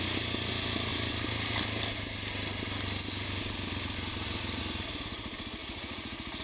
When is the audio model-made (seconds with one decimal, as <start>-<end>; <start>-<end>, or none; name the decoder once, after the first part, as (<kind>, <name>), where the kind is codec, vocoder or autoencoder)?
5.6-6.4 (vocoder, Vocos)